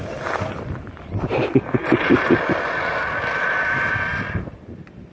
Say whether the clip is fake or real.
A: real